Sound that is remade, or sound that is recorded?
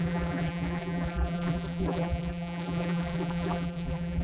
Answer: remade